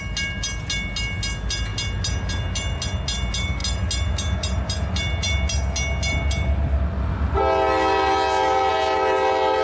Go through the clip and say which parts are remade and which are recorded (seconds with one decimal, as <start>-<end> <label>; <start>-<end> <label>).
0.0-9.6 recorded